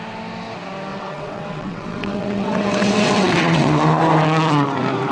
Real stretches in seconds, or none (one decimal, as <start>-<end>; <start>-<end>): 0.0-0.9; 4.0-5.1